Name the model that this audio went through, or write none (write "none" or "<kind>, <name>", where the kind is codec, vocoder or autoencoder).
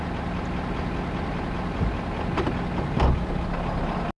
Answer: none